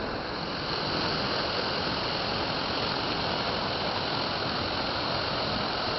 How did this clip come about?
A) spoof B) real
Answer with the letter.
B